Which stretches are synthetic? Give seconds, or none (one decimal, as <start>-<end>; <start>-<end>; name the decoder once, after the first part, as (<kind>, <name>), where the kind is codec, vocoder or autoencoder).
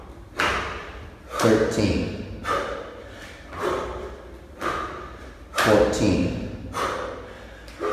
none